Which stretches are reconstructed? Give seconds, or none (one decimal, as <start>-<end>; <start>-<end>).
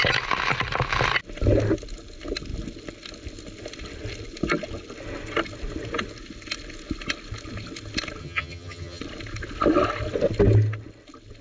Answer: 8.2-9.0